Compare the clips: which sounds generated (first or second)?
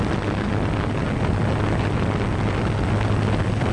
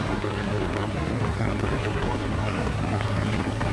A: second